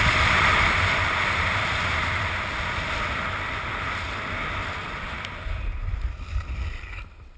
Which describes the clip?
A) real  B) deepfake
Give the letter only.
B